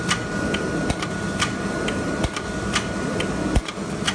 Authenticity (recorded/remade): recorded